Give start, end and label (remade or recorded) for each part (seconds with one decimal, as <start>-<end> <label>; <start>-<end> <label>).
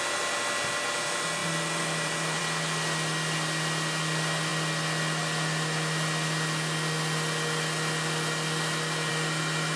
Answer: 0.0-1.4 recorded; 1.4-2.4 remade; 2.4-9.8 recorded